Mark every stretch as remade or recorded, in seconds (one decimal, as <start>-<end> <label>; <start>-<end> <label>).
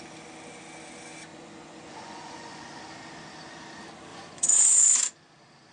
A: 0.0-1.3 recorded; 1.3-2.8 remade; 2.8-4.1 recorded; 4.1-4.7 remade; 4.7-5.7 recorded